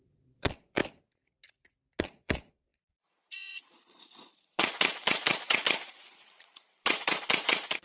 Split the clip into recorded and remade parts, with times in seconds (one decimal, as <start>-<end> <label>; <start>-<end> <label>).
0.0-0.8 remade; 0.8-2.0 recorded; 2.0-7.8 remade